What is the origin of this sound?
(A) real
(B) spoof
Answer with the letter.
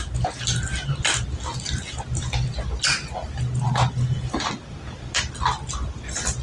A